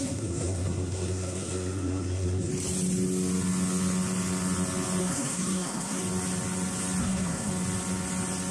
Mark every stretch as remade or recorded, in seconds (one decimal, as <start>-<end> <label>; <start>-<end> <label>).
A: 0.0-2.5 remade; 2.5-5.0 recorded; 5.0-6.0 remade; 6.0-7.0 recorded; 7.0-7.5 remade; 7.5-8.5 recorded